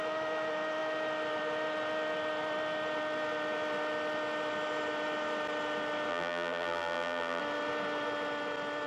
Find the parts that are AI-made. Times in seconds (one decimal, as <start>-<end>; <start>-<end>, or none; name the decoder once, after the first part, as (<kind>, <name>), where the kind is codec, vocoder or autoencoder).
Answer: 6.1-7.4 (vocoder, BigVGAN v2)